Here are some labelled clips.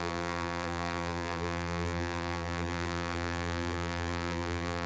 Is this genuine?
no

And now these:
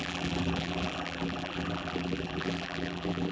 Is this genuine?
no